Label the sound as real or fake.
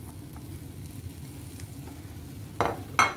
real